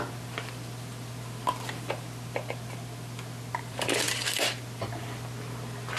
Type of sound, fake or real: real